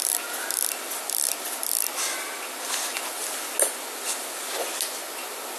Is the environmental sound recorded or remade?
recorded